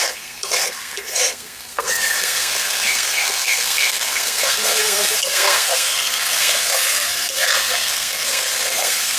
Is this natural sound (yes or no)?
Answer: no